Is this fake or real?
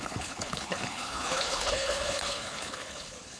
fake